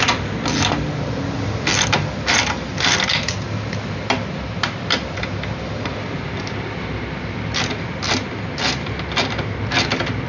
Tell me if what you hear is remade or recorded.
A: remade